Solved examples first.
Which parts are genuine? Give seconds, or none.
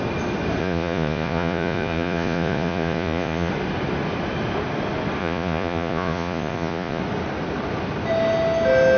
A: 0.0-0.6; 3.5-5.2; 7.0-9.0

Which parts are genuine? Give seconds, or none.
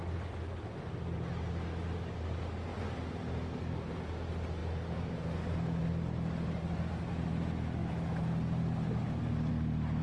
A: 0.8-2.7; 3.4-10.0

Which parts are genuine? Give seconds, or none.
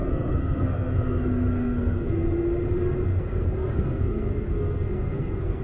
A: 2.1-3.1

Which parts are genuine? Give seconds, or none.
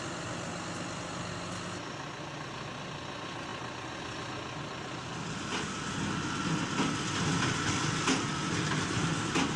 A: 0.0-9.6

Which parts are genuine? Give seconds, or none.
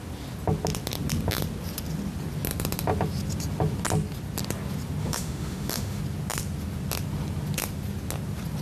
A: 0.0-5.0; 6.0-8.6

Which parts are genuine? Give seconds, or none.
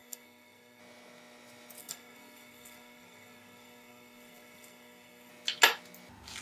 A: 0.8-1.8; 5.3-6.4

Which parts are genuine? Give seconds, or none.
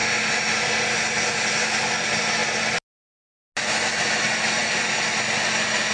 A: 0.0-5.9